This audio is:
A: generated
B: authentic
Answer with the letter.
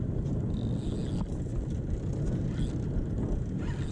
B